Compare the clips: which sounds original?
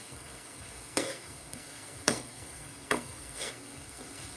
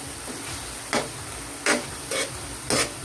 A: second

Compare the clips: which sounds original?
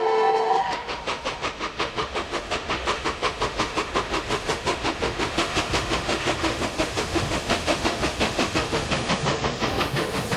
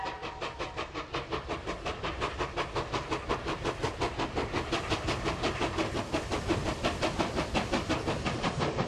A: second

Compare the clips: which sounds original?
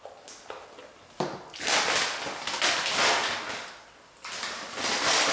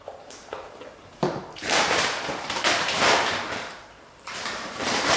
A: first